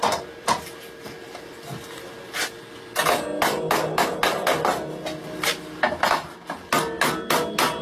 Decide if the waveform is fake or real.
real